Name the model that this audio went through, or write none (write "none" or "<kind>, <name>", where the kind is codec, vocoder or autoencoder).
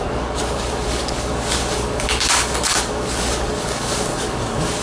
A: codec, DAC